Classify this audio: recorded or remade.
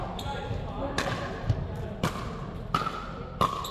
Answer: recorded